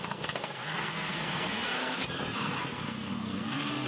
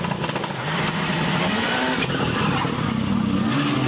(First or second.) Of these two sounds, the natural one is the second